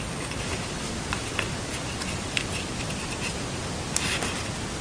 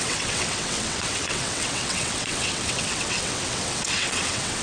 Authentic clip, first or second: first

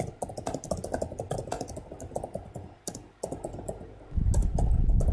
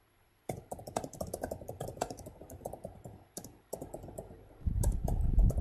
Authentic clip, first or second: first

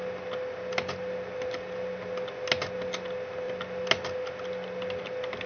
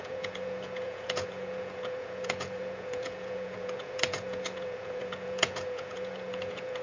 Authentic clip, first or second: first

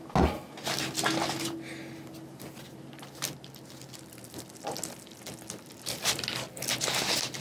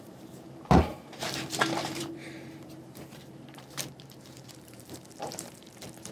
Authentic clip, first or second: first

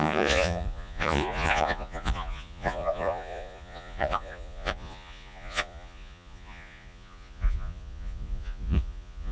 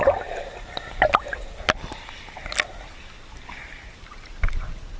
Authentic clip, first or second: second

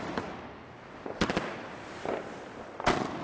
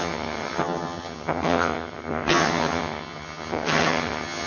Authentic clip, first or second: first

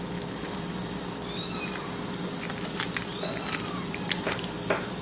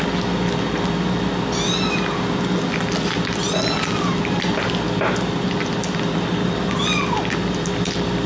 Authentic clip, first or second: second